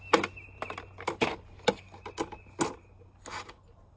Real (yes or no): yes